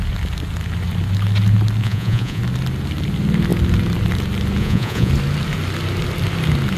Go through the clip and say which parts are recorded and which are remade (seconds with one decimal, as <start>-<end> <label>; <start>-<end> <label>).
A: 0.0-1.8 recorded; 1.8-2.4 remade; 2.4-4.6 recorded; 4.6-5.1 remade; 5.1-6.8 recorded